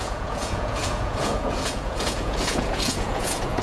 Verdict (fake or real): fake